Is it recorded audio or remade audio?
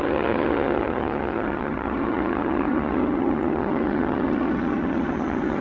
remade